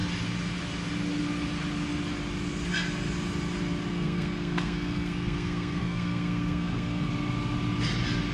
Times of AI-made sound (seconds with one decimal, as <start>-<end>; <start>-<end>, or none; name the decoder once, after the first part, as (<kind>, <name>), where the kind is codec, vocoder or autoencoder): 3.9-7.1 (codec, SNAC)